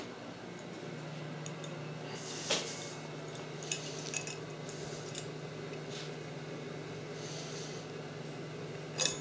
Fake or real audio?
real